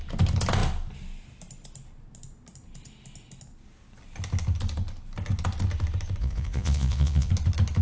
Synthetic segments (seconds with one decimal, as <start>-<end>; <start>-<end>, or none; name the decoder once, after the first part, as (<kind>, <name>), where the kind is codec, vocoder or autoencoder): 6.2-7.3 (vocoder, Vocos)